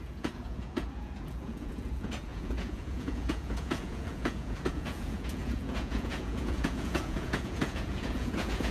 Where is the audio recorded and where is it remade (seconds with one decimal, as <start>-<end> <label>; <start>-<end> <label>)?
0.0-8.7 remade